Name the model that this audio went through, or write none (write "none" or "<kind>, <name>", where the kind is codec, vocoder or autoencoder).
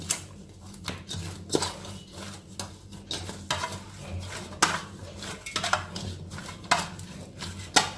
none